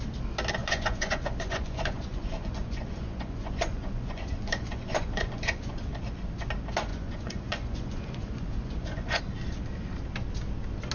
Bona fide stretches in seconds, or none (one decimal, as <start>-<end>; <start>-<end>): 0.0-0.6; 5.9-6.9; 9.2-10.9